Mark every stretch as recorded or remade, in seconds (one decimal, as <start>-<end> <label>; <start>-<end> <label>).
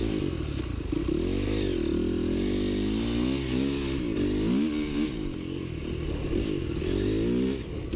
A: 0.0-8.0 recorded